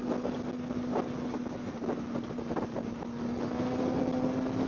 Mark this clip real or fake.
real